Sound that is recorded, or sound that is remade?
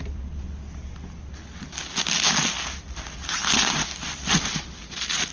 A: recorded